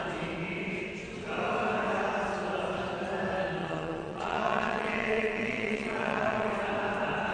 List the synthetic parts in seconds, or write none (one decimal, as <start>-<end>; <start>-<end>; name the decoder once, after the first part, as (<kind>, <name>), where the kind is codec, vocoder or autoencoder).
3.6-6.5 (vocoder, WaveNeXt)